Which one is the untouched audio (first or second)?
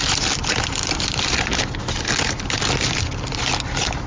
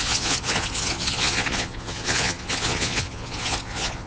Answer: first